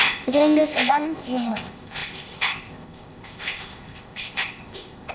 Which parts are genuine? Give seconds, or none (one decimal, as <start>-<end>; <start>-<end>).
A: none